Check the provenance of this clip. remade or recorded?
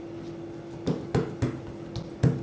recorded